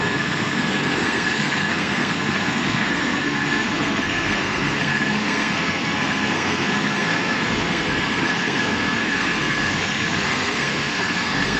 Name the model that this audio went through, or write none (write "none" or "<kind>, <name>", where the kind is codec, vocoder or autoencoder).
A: codec, SNAC